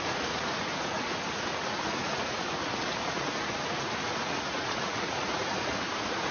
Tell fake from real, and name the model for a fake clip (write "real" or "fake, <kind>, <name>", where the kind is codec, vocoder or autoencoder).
fake, vocoder, Vocos